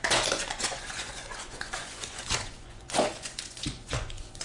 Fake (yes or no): yes